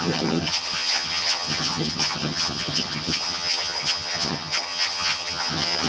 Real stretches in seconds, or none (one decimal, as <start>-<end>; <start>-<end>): none